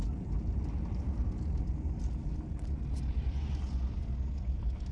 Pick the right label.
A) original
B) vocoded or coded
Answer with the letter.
A